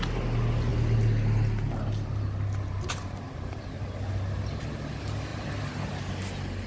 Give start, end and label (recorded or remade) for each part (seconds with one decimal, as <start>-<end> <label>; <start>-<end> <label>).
0.0-6.7 recorded